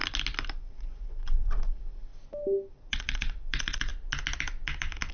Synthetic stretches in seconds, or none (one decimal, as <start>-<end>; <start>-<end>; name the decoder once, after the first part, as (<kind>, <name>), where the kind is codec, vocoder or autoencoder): 0.6-2.1 (vocoder, WaveNeXt); 2.7-3.9